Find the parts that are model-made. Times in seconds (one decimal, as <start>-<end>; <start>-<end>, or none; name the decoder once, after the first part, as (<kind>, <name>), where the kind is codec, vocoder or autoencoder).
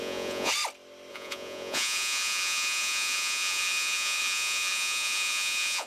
0.0-0.5 (vocoder, Vocos); 1.1-5.9